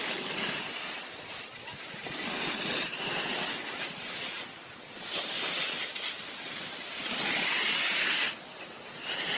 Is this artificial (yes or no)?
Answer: yes